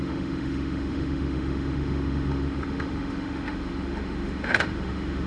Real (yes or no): no